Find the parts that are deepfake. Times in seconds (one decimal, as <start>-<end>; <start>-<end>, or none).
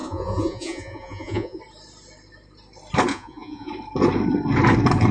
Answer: 0.0-1.6; 3.1-3.7